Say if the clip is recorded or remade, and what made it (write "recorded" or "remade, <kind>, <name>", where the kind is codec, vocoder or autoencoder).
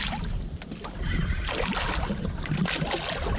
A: recorded